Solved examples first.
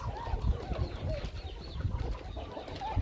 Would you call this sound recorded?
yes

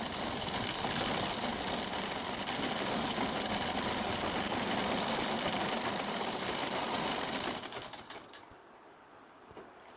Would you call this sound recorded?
yes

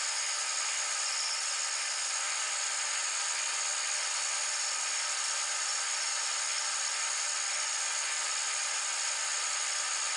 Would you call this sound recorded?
yes